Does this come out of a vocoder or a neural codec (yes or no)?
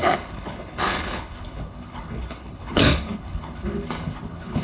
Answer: yes